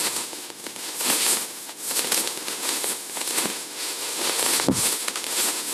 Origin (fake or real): fake